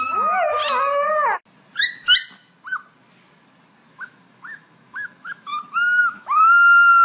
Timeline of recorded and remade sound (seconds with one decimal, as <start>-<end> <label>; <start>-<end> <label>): 0.0-0.6 remade; 0.6-3.9 recorded; 3.9-5.5 remade; 5.5-6.0 recorded; 6.0-7.0 remade